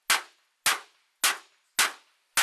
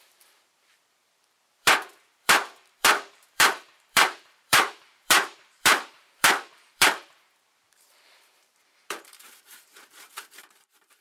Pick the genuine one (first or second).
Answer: first